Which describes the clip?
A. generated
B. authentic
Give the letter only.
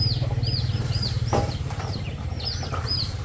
A